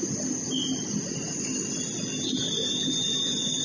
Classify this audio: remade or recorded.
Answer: recorded